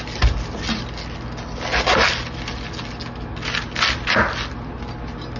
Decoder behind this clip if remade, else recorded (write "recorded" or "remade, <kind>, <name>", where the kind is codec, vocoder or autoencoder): recorded